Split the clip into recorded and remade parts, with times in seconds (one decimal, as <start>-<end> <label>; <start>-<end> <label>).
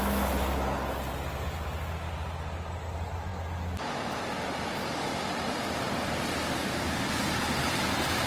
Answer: 0.0-8.3 recorded